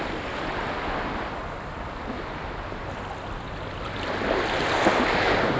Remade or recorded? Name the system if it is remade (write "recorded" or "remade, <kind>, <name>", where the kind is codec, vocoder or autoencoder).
recorded